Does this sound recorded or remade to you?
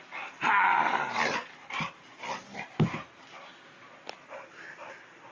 recorded